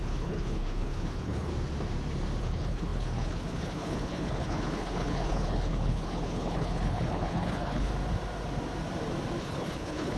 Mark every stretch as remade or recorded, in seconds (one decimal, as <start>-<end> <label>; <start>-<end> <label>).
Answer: 0.0-1.5 remade; 1.5-2.4 recorded; 2.4-7.9 remade; 7.9-9.4 recorded; 9.4-10.2 remade